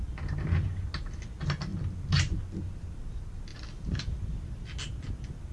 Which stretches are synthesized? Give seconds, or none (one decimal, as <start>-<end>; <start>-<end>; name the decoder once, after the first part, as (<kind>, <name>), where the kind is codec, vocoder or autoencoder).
1.7-2.4 (vocoder, BigVGAN v2); 3.5-4.4